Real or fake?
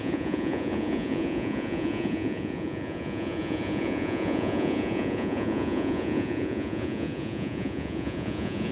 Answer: fake